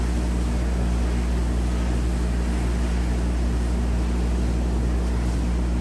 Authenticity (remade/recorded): recorded